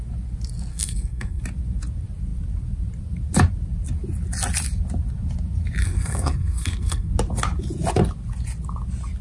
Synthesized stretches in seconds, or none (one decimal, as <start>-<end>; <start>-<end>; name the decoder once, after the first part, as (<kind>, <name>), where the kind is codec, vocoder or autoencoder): 0.7-1.4 (codec, SNAC); 5.8-7.1